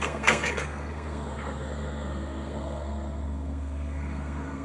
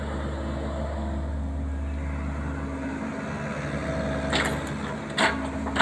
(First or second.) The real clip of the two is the second